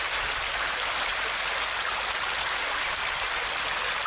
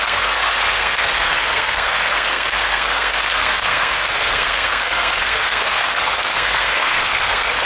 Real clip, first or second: first